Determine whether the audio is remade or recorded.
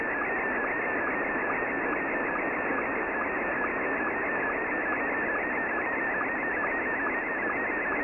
recorded